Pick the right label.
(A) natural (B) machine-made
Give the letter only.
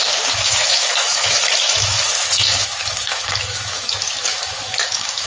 B